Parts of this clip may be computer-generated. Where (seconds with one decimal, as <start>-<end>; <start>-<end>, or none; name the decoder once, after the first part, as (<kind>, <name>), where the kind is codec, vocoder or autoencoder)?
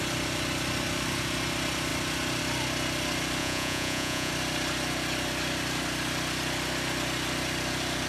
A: 3.4-4.3 (vocoder, Vocos)